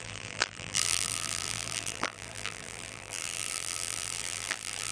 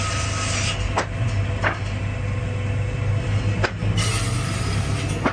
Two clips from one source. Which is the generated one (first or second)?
first